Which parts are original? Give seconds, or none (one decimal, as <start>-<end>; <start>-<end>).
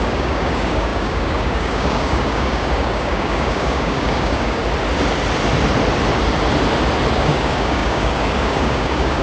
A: 4.6-7.1